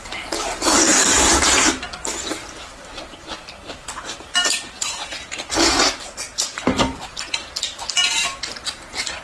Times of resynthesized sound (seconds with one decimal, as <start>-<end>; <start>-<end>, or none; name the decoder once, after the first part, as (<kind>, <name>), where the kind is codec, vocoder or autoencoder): none